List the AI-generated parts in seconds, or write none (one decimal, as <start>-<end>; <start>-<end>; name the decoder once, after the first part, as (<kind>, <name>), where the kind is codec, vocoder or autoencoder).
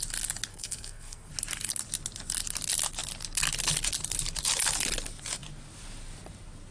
0.5-1.3 (codec, SNAC)